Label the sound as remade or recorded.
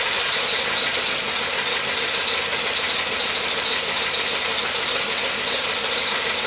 recorded